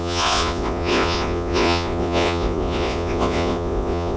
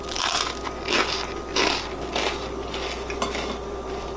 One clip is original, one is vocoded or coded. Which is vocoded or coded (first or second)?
first